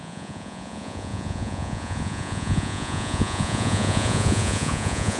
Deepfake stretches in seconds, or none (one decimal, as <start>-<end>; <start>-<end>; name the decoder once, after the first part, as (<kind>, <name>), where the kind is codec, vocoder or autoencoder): 0.0-5.2 (vocoder, Vocos)